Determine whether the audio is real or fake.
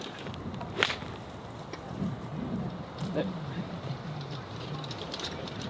fake